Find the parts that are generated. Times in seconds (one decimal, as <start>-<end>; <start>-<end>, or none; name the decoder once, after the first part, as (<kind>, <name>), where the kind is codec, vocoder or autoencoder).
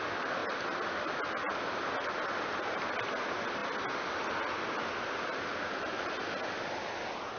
none